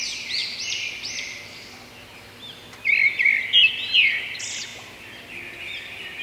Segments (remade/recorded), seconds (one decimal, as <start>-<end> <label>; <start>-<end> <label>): 0.0-0.4 remade; 0.4-4.1 recorded; 4.1-4.7 remade; 4.7-5.6 recorded; 5.6-6.2 remade